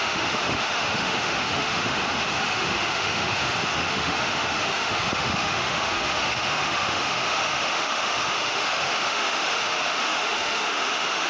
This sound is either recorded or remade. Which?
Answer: remade